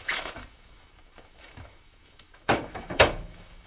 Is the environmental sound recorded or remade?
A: remade